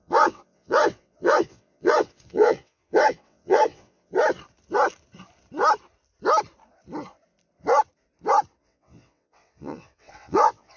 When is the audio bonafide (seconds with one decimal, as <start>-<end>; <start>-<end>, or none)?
4.1-8.6